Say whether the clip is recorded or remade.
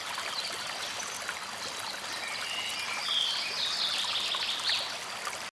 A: recorded